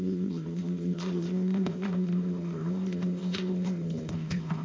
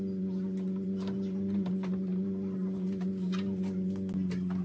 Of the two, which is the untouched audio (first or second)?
second